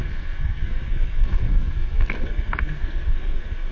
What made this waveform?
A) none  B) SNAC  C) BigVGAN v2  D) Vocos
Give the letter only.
B